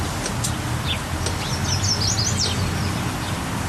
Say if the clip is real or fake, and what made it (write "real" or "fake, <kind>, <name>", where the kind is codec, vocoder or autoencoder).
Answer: real